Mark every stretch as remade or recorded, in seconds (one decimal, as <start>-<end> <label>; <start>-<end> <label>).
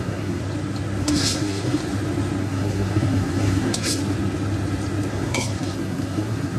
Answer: 0.0-0.4 remade; 0.4-1.0 recorded; 1.0-1.8 remade; 1.8-2.4 recorded; 2.4-4.0 remade; 4.0-5.1 recorded; 5.1-6.6 remade